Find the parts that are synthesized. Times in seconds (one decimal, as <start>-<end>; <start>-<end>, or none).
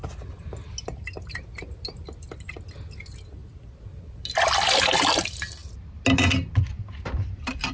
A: none